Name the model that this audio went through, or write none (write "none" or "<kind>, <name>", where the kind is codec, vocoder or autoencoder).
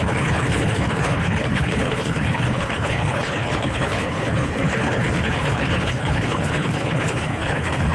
codec, HILCodec